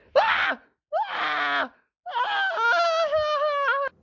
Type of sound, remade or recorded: recorded